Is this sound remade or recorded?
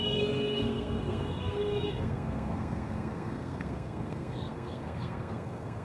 remade